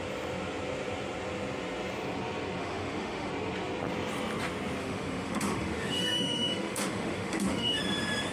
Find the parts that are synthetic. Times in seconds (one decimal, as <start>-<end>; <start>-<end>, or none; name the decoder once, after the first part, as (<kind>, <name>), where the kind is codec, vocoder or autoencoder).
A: 2.6-3.3 (autoencoder, DAC-VAE); 4.8-7.8